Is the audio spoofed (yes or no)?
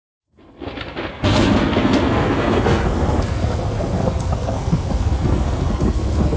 yes